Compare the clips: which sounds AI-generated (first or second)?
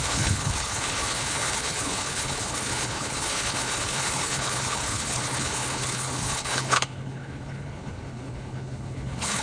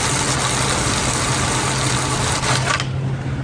first